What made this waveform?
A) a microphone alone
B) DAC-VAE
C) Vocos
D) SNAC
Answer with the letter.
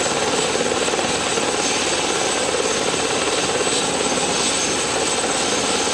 A